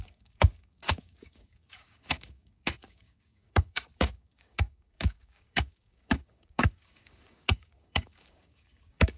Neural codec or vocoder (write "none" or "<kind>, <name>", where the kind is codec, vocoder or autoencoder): codec, DAC